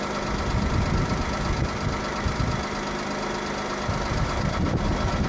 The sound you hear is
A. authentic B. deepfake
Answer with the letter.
A